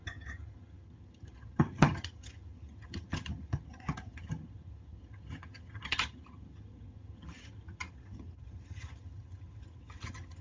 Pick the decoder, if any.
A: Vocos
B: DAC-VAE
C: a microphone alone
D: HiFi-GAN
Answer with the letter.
D